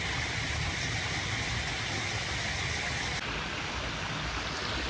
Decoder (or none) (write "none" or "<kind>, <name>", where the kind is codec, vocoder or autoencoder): none